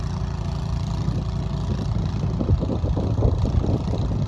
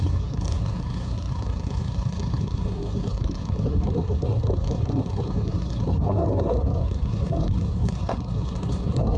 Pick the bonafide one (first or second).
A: first